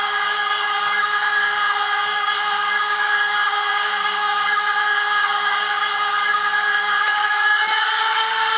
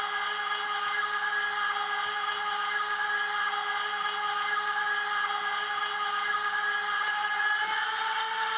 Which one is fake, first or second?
first